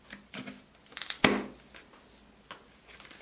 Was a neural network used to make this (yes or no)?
no